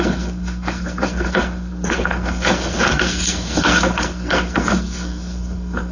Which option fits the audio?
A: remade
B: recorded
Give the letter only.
A